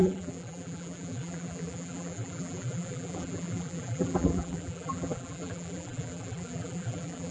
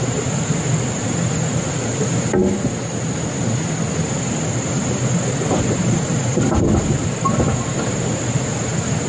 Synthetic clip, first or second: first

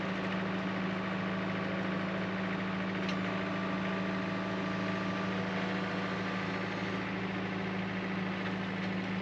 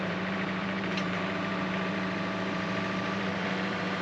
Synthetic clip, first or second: second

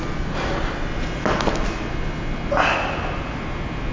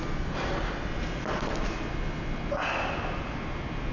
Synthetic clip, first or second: second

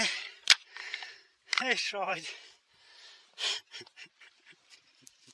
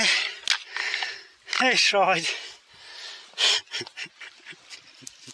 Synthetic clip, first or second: first